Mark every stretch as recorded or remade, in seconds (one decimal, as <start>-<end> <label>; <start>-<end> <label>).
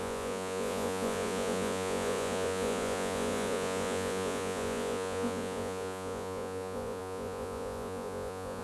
0.0-8.6 remade